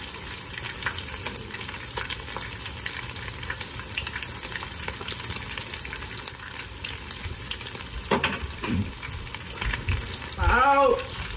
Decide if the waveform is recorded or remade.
recorded